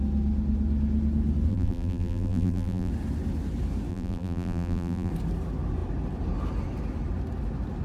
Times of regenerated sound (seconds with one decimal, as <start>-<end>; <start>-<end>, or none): 1.5-2.9; 3.9-5.1